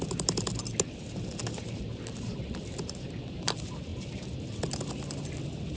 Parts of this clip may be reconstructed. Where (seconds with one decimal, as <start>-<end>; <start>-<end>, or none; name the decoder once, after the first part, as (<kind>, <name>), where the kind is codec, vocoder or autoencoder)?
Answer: none